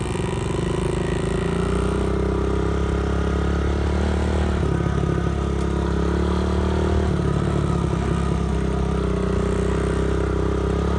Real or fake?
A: real